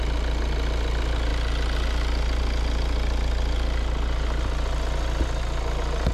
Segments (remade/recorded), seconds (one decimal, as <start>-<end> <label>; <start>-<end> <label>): 0.0-6.1 recorded